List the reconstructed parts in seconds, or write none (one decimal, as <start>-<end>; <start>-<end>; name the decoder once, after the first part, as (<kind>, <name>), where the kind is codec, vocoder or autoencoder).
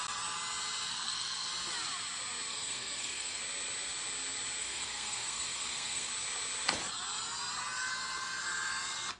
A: 0.9-1.5 (codec, SNAC); 2.5-3.4; 4.6-6.1